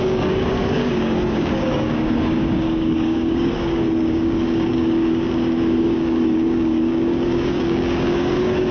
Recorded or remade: remade